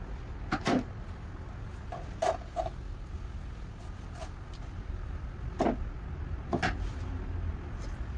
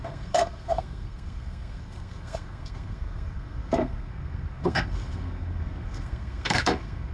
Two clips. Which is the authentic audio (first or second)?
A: first